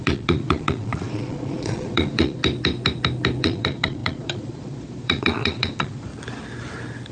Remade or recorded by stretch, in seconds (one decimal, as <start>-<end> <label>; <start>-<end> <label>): 0.0-2.4 remade; 2.4-3.4 recorded; 3.4-6.1 remade; 6.1-7.1 recorded